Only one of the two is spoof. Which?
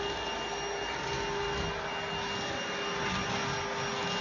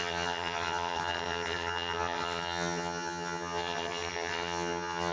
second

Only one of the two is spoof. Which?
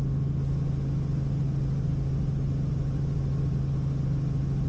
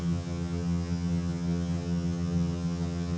second